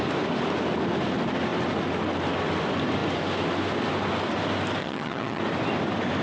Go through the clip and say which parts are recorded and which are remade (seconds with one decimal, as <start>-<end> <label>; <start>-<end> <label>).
0.0-4.8 recorded; 4.8-5.4 remade; 5.4-6.2 recorded